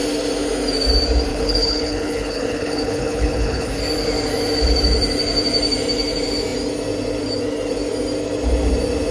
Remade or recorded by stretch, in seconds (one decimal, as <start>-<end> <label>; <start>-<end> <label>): 0.0-1.3 recorded; 1.3-3.7 remade; 3.7-9.1 recorded